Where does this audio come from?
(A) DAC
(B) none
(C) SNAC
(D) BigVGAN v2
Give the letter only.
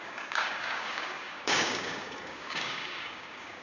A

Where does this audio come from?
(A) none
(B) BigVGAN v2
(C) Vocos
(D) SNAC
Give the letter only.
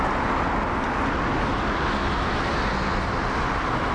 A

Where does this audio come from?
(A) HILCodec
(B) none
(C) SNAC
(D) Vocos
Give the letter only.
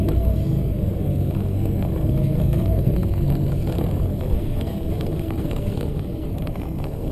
C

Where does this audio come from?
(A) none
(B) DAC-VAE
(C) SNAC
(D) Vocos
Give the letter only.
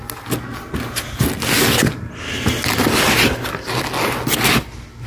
A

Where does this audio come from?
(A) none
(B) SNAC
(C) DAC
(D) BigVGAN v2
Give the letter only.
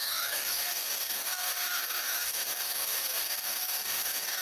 C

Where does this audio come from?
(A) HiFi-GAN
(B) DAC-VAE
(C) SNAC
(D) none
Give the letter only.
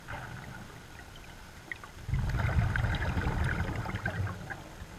D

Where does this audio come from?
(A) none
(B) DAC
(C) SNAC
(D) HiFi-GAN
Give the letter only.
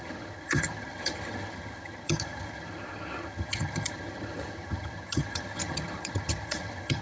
D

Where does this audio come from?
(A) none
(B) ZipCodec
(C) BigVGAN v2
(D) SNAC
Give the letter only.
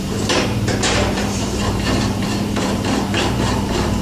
C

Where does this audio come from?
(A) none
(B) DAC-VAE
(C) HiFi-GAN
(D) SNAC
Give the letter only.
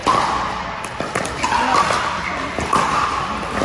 A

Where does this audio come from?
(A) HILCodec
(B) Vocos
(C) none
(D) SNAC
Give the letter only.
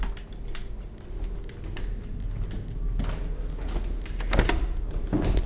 C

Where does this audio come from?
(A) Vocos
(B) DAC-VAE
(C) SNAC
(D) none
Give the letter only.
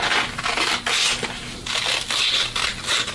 D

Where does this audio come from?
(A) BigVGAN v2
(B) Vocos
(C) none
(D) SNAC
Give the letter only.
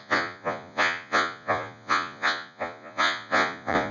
B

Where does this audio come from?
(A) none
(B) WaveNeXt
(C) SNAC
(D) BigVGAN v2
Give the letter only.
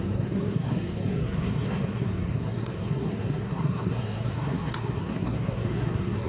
C